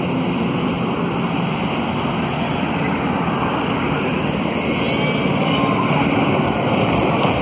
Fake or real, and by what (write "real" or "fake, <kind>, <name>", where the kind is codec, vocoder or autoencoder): real